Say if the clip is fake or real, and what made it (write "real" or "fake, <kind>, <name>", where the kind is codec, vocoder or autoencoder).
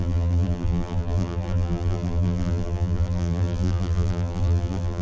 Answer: fake, vocoder, BigVGAN v2